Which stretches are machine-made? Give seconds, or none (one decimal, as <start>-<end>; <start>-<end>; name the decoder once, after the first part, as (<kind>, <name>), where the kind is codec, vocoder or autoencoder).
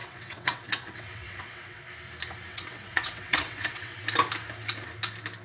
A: 0.0-1.8 (vocoder, WaveNeXt); 2.5-4.0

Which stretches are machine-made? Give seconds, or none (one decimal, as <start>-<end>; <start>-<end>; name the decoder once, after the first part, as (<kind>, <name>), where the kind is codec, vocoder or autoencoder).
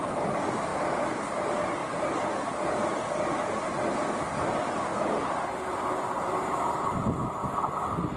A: none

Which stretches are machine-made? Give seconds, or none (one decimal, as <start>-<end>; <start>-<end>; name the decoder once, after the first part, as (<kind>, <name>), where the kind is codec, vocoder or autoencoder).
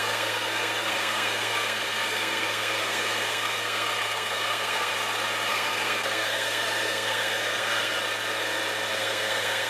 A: 0.0-4.9 (codec, SNAC); 5.5-7.9; 8.9-9.7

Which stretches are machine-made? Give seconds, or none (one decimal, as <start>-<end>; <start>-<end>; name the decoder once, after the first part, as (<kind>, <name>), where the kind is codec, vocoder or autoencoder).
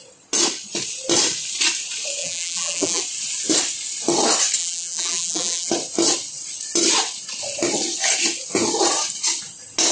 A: 2.2-3.0 (vocoder, BigVGAN v2); 4.6-5.7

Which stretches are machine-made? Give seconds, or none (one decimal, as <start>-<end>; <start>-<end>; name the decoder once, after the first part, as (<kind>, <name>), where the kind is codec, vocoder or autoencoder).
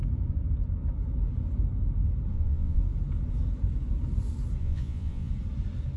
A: 2.3-2.8 (vocoder, Vocos); 4.6-5.3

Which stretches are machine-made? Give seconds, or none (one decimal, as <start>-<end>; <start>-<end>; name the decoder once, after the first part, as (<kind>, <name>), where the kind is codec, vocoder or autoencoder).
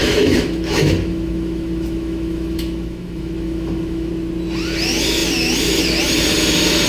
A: 0.0-4.1 (autoencoder, DAC-VAE)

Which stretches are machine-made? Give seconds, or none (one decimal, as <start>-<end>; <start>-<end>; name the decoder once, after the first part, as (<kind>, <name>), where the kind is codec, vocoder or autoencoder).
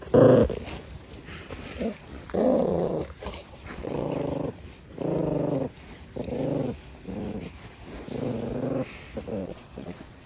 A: 2.1-3.0 (vocoder, WaveNeXt); 3.4-4.1; 9.4-10.3